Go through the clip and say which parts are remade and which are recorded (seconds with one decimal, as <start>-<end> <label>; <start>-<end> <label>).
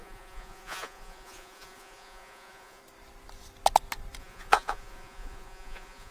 0.0-2.8 remade; 2.8-4.2 recorded; 4.2-6.1 remade